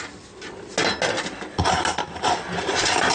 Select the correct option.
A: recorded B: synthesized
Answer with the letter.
A